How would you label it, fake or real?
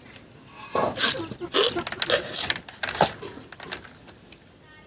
real